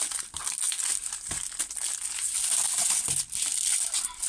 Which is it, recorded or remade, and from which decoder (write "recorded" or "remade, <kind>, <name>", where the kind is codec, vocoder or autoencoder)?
recorded